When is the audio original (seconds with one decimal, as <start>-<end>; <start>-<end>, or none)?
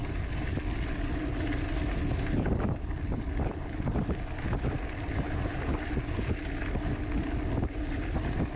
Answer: 0.0-8.6